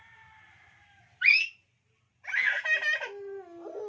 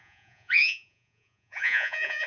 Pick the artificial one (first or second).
second